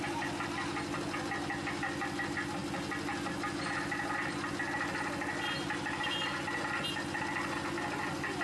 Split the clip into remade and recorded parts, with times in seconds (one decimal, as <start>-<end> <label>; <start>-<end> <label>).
0.0-8.4 recorded